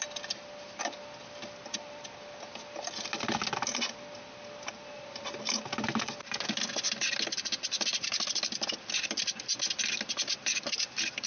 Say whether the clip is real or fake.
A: real